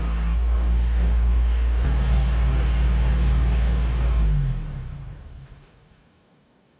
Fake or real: fake